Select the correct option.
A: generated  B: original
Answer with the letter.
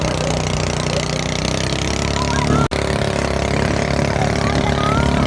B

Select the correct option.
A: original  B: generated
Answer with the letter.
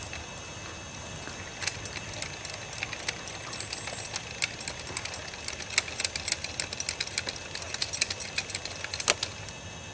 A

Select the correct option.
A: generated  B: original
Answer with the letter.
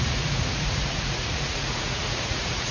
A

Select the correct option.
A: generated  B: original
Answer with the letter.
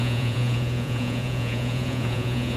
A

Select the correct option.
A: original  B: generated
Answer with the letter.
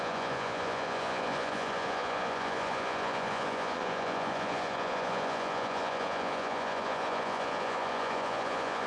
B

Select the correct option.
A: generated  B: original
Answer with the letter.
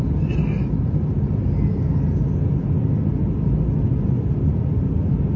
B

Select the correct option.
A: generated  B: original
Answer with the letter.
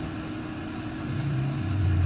B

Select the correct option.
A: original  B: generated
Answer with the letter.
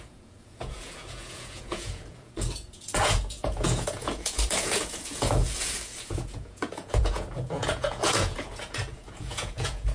B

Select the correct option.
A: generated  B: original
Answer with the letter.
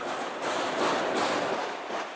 B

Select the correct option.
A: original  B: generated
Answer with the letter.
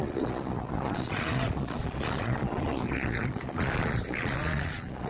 B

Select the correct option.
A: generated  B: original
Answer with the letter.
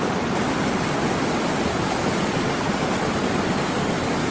B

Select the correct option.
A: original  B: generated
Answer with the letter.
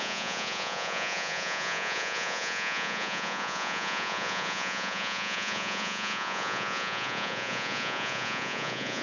B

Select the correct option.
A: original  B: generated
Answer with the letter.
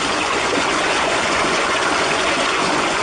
B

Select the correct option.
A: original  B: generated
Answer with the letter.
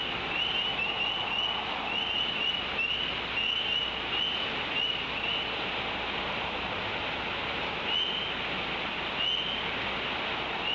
A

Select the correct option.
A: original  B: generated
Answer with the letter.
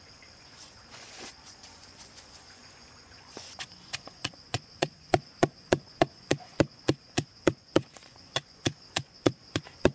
B